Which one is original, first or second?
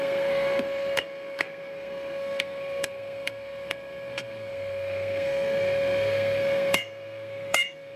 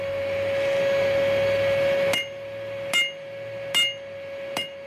second